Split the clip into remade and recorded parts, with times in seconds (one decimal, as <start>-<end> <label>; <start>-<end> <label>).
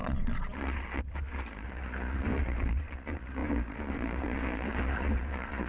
0.0-5.7 remade